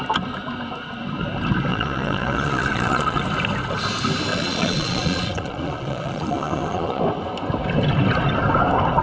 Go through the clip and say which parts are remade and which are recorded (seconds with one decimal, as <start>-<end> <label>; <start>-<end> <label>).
0.0-1.7 recorded; 1.7-3.2 remade; 3.2-4.3 recorded; 4.3-7.0 remade; 7.0-9.0 recorded